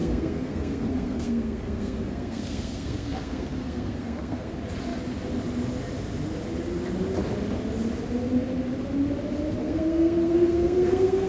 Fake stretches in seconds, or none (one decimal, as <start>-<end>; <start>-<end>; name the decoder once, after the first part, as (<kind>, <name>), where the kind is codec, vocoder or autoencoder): 0.0-4.5 (codec, SNAC); 9.6-11.3